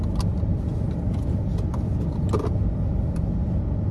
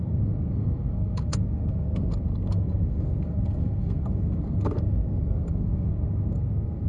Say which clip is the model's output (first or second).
second